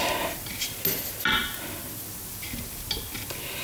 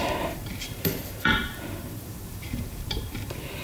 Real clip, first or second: first